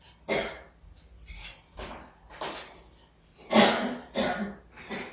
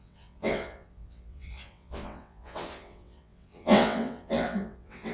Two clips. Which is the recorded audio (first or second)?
first